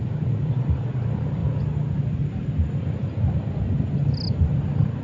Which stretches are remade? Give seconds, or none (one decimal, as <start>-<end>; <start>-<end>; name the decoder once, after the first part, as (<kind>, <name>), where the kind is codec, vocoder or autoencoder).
none